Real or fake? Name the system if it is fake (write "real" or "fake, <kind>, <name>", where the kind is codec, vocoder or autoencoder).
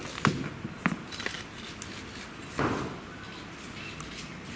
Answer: real